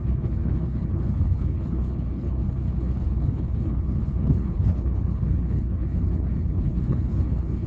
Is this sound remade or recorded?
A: remade